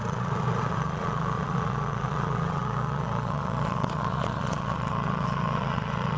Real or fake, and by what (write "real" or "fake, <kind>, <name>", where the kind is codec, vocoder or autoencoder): fake, vocoder, Vocos